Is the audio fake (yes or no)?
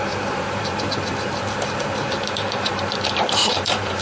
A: yes